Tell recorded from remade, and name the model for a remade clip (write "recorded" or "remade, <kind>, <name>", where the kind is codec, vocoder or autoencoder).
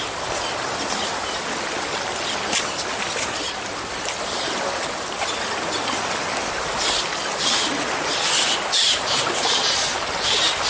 recorded